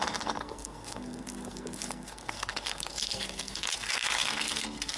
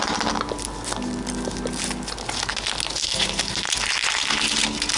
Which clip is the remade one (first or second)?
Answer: first